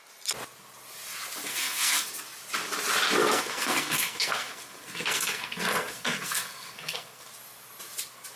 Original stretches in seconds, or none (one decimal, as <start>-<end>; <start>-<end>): 0.0-1.5; 2.1-3.2; 7.3-8.4